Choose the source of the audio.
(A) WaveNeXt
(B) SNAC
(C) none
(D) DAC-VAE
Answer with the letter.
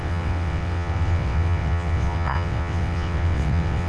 A